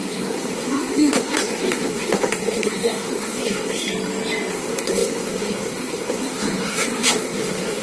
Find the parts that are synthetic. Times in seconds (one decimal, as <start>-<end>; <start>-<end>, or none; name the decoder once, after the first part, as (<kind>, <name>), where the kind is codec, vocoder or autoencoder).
0.0-3.9 (codec, SNAC); 4.5-7.8